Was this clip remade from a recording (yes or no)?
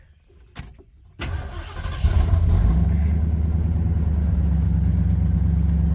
no